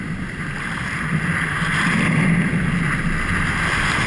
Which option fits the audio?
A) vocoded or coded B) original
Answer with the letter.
B